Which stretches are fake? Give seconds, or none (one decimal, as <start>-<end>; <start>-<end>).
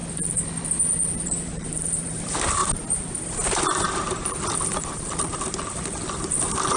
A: 0.9-2.6; 4.8-5.3